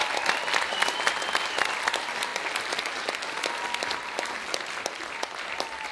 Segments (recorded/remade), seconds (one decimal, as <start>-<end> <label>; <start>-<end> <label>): 0.0-5.9 recorded